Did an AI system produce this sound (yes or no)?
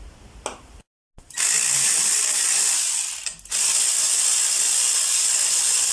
no